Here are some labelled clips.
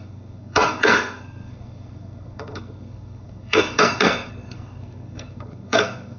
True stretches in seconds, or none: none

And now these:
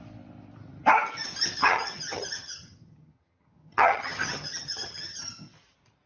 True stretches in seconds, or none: 0.0-1.6; 5.3-6.1

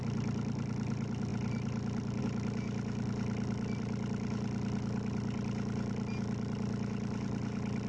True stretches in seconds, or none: 0.0-7.9

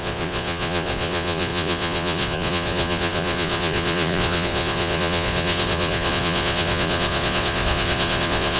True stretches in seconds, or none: none

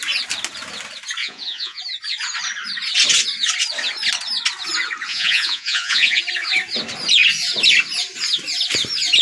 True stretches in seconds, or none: 0.0-1.2; 1.8-5.1; 6.2-9.2

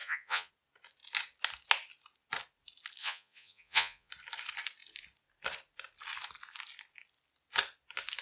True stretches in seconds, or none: 0.5-3.0; 4.1-8.2